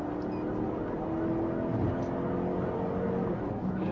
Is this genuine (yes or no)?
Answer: yes